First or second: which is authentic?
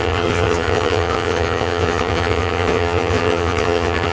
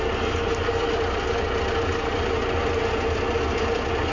second